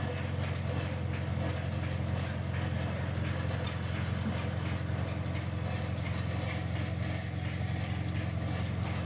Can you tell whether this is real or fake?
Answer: real